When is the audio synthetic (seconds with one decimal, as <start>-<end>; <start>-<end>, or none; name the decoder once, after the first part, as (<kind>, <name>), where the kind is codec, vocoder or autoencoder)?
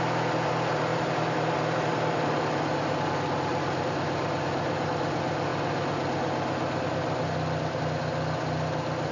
0.9-3.1 (vocoder, BigVGAN v2); 3.5-4.9